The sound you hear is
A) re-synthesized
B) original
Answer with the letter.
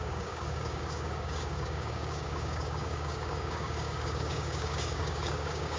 A